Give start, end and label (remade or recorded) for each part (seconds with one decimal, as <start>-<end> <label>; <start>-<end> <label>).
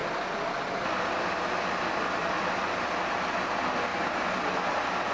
0.0-1.5 recorded; 1.5-3.9 remade; 3.9-4.6 recorded; 4.6-5.1 remade